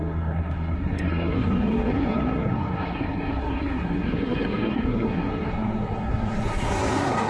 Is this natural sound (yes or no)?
no